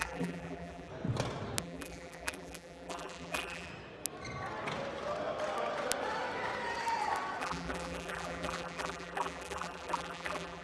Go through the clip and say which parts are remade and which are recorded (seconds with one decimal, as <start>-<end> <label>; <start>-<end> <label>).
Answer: 0.0-0.9 remade; 0.9-1.6 recorded; 1.6-3.7 remade; 3.7-7.4 recorded; 7.4-10.6 remade